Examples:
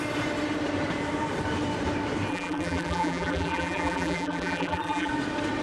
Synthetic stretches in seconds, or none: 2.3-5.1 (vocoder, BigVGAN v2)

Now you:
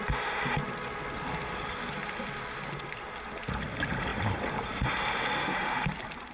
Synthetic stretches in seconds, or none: 4.1-5.0 (vocoder, BigVGAN v2)

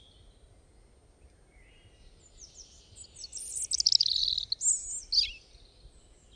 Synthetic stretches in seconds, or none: none

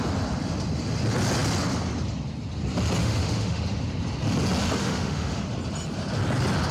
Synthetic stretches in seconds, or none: 3.0-3.6 (autoencoder, DAC-VAE); 4.8-5.4

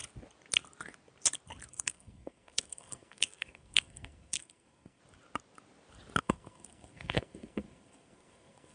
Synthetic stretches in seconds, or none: 1.7-5.0 (codec, SNAC); 6.2-8.7

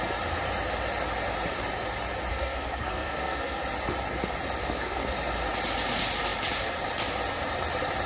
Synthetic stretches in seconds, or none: 2.3-3.6 (codec, SNAC); 4.6-5.1